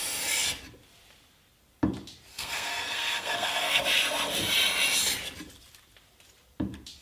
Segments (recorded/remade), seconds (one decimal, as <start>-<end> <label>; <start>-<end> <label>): 0.0-2.3 recorded; 2.3-3.8 remade; 3.8-7.0 recorded

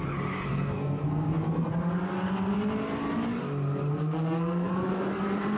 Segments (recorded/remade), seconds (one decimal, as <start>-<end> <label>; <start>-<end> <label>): 0.0-0.5 recorded; 0.5-1.7 remade; 1.7-3.9 recorded; 3.9-4.7 remade; 4.7-5.6 recorded

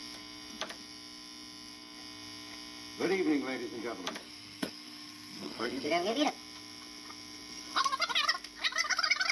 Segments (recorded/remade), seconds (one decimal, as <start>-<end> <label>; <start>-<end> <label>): 0.0-4.2 recorded; 4.2-5.9 remade; 5.9-9.3 recorded